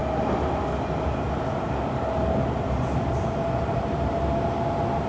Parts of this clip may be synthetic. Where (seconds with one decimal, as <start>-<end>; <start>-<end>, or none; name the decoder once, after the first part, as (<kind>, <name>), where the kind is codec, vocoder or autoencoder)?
none